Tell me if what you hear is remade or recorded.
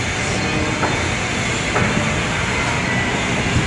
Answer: recorded